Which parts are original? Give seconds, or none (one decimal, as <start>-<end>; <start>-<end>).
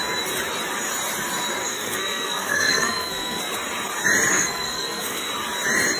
0.0-1.6; 3.4-4.3; 5.3-6.0